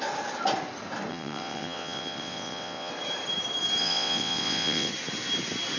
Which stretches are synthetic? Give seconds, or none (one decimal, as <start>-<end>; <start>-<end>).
1.1-2.9; 3.8-4.9